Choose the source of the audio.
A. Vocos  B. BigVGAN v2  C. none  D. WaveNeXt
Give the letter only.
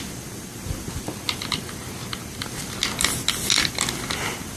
C